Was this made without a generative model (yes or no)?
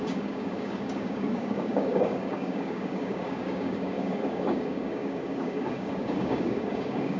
no